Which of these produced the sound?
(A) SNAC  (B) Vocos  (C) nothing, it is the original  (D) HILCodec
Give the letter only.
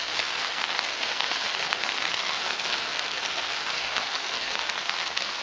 A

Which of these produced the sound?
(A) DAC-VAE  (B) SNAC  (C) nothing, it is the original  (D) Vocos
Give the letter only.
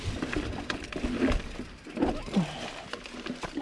C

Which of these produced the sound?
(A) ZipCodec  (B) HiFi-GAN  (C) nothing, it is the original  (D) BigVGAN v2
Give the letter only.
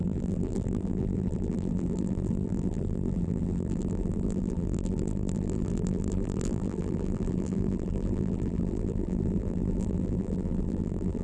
D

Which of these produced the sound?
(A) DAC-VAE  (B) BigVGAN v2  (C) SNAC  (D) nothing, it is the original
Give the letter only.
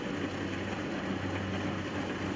D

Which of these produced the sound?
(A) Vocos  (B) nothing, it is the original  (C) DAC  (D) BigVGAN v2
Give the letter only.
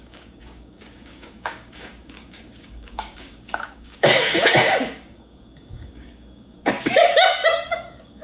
C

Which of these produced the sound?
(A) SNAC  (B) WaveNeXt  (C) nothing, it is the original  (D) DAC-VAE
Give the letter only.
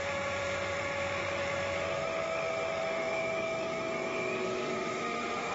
D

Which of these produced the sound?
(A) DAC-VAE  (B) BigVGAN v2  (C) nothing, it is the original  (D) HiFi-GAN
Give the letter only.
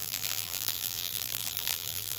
B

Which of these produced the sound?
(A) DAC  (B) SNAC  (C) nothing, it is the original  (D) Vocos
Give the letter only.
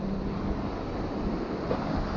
C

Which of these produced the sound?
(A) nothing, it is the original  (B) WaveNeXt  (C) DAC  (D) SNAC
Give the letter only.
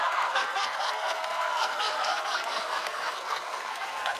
D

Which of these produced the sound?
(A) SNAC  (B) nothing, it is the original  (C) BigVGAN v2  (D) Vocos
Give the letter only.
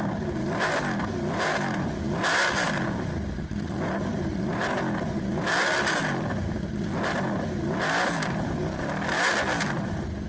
B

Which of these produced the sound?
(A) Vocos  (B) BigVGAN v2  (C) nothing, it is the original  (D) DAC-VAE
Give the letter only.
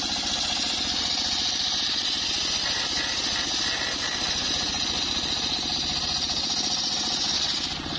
C